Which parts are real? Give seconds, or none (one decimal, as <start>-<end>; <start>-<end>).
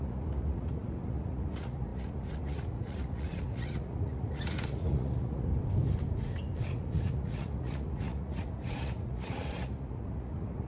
5.5-6.7